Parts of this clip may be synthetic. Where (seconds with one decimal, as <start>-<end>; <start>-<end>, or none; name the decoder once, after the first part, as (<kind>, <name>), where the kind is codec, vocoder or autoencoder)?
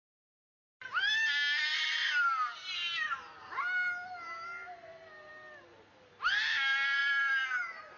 none